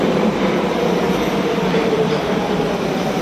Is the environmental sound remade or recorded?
remade